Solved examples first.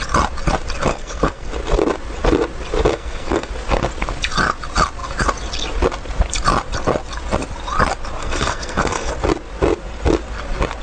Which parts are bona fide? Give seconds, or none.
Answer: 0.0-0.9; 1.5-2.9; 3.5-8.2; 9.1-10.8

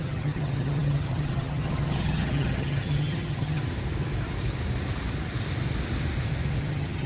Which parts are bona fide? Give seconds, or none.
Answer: 3.6-6.6

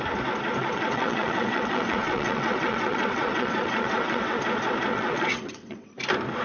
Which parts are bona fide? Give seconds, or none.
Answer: 0.0-0.6; 4.4-4.9; 5.9-6.4

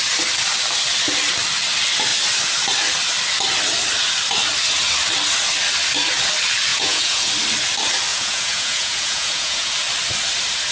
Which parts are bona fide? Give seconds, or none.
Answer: 0.0-6.7; 7.3-8.1; 9.7-10.7

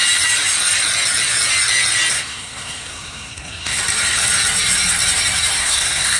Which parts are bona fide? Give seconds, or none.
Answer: 0.0-2.1; 3.8-5.6

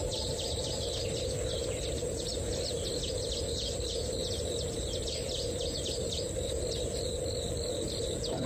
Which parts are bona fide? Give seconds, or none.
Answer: 0.0-8.5

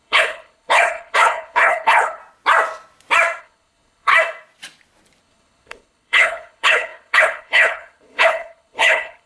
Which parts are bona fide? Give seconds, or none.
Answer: 2.2-3.4; 4.1-5.2

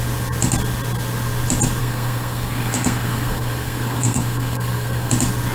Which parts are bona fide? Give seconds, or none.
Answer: 0.0-1.8; 5.1-5.5